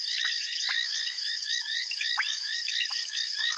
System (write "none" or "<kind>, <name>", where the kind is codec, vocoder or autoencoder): autoencoder, DAC-VAE